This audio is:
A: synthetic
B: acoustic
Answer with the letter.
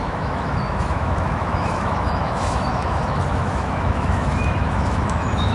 A